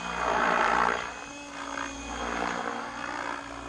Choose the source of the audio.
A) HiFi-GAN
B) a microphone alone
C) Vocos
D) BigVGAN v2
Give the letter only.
B